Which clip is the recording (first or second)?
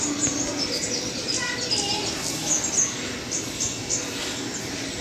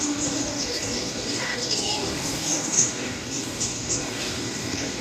first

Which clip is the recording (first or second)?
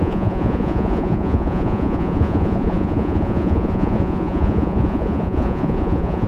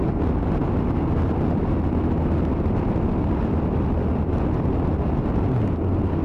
second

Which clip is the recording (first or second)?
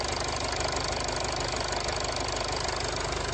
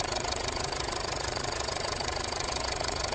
first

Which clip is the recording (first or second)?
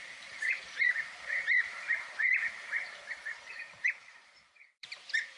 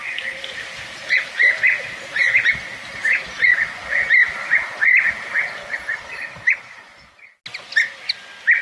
second